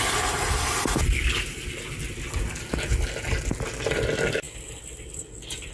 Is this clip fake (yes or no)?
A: no